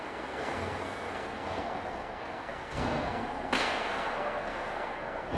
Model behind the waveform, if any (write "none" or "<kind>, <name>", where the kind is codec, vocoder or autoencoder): codec, SNAC